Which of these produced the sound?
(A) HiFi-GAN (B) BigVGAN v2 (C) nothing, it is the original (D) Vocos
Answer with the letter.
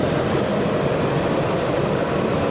C